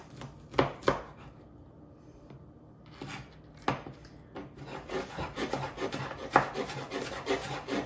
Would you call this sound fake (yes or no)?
no